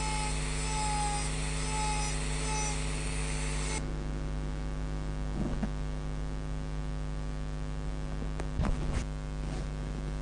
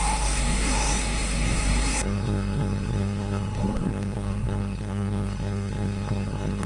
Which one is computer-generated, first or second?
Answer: second